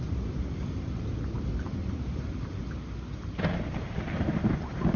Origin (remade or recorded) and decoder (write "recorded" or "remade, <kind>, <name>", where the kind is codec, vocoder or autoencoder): recorded